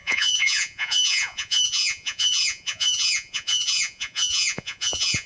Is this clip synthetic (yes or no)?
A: yes